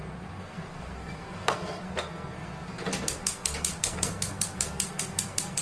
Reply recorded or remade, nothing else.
remade